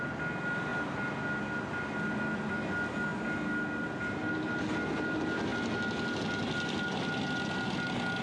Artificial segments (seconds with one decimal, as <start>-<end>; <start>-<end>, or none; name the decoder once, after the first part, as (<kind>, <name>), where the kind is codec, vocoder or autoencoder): none

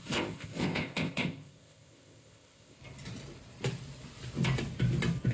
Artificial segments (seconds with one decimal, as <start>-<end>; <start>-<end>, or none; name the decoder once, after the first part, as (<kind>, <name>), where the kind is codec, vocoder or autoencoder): 0.0-2.8 (codec, ZipCodec)

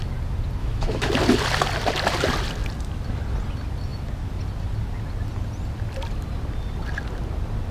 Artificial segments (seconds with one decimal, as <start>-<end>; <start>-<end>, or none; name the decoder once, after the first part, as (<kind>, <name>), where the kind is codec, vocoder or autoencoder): 0.6-1.1 (autoencoder, DAC-VAE)